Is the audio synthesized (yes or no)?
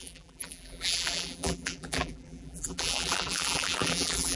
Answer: yes